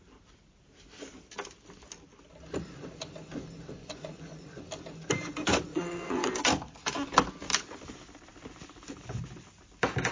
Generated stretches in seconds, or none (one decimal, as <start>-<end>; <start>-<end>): 3.8-4.6; 5.7-6.3